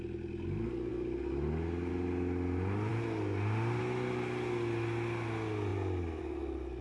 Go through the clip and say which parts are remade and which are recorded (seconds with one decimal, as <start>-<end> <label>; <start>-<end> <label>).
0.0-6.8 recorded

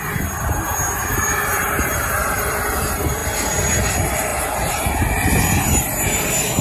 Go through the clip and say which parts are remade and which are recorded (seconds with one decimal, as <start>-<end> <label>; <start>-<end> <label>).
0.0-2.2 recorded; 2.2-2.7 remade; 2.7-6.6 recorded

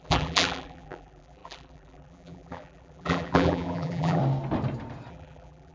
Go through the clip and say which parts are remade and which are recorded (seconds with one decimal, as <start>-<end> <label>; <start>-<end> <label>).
0.0-4.2 remade; 4.2-5.1 recorded; 5.1-5.7 remade